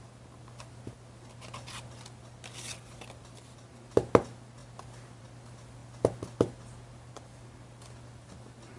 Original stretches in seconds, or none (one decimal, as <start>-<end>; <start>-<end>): 0.0-8.8